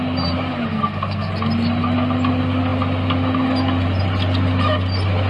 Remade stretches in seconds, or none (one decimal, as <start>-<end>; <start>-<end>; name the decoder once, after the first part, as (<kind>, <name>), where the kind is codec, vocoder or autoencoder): 0.7-1.3 (codec, SNAC)